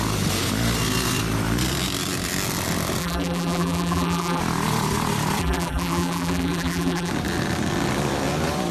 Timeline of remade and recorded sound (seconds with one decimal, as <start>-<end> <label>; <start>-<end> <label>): 0.0-3.0 recorded; 3.0-4.4 remade; 4.4-5.4 recorded; 5.4-7.1 remade; 7.1-8.7 recorded

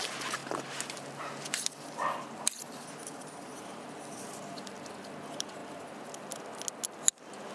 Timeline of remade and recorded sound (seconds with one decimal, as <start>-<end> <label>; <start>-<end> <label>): 0.0-0.4 recorded; 0.4-4.9 remade; 4.9-7.5 recorded

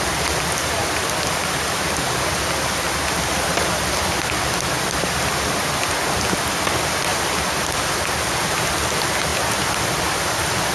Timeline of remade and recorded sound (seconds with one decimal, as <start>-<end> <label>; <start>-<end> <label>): 0.0-0.8 recorded; 0.8-2.3 remade; 2.3-7.1 recorded; 7.1-7.9 remade; 7.9-10.7 recorded

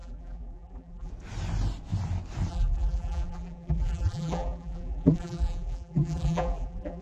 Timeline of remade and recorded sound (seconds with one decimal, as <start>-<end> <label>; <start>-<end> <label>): 0.0-1.1 remade; 1.1-2.5 recorded; 2.5-7.0 remade

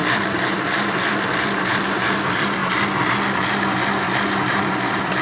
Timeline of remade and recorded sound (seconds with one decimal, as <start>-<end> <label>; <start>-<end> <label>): 0.0-2.6 remade; 2.6-4.5 recorded; 4.5-5.2 remade

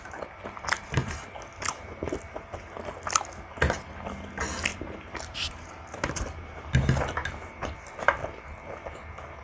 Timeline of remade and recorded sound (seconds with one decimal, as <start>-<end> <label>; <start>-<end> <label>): 0.0-4.7 recorded; 4.7-6.7 remade; 6.7-9.4 recorded

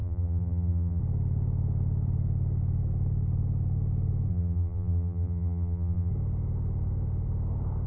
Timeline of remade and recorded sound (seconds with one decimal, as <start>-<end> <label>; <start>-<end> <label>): 0.0-1.0 remade; 1.0-4.3 recorded; 4.3-6.1 remade; 6.1-7.9 recorded

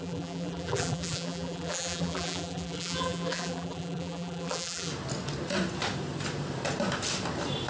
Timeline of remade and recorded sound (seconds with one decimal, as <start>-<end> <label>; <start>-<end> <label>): 0.0-4.9 remade; 4.9-7.7 recorded